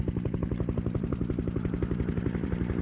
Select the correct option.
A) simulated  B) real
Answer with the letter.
A